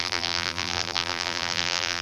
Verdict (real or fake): fake